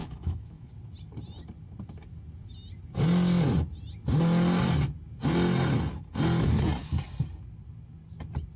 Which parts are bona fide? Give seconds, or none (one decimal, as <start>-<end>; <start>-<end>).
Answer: 0.7-8.6